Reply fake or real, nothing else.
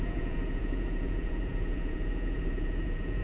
fake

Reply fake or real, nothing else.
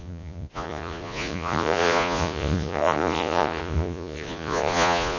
fake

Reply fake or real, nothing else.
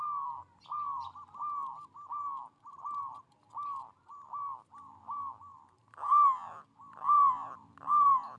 real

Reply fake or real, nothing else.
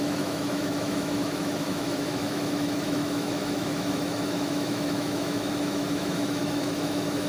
fake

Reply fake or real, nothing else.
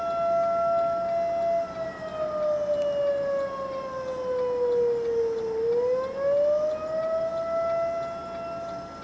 real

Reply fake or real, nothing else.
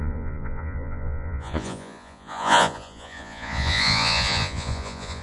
fake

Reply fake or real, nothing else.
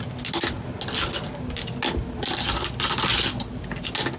real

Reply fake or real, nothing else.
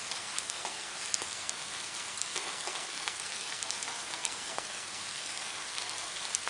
fake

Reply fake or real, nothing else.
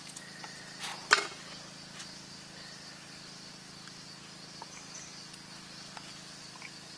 real